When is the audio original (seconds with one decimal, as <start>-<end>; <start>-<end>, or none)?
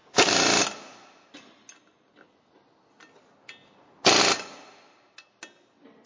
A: 0.0-6.1